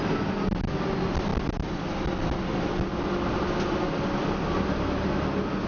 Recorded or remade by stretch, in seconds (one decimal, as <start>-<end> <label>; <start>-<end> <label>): 0.0-5.7 recorded